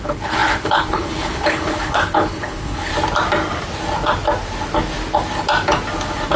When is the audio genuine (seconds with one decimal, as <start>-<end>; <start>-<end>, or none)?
2.9-6.4